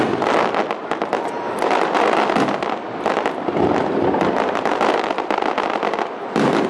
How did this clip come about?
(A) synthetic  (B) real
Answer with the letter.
B